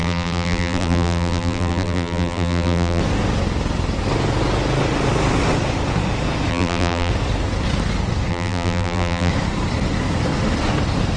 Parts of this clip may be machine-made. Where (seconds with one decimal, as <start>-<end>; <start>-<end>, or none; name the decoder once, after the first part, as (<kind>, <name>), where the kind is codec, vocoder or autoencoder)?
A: 0.0-3.0 (vocoder, BigVGAN v2); 6.5-7.1; 8.3-9.3

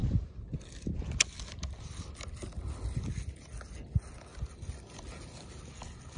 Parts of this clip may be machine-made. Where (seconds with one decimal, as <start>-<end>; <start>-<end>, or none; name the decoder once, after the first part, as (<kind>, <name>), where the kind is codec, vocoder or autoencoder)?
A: 4.3-5.6 (vocoder, BigVGAN v2)

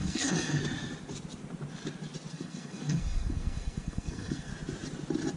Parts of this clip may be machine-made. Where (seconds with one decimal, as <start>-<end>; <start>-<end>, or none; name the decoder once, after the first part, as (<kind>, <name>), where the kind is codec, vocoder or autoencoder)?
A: 0.0-0.6 (codec, SNAC); 2.3-4.5